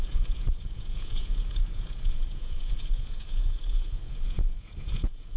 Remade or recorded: remade